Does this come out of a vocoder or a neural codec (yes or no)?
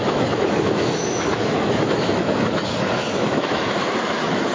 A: yes